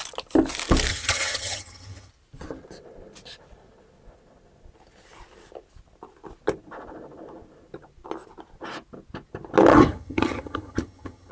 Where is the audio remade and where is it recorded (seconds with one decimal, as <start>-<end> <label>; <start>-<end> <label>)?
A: 0.0-0.9 recorded; 0.9-2.1 remade; 2.1-9.7 recorded; 9.7-11.3 remade